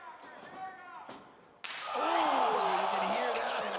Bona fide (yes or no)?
yes